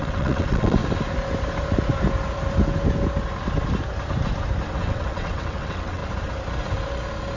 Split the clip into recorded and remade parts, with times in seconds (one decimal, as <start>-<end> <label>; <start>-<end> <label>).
0.0-0.8 remade; 0.8-4.8 recorded; 4.8-6.0 remade; 6.0-7.4 recorded